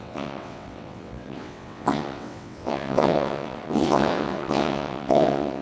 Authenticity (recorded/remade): remade